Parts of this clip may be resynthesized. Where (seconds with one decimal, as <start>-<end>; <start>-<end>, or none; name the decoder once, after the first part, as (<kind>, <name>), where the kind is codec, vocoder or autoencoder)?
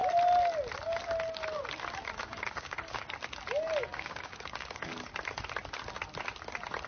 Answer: 2.2-3.0 (codec, DAC); 3.9-4.9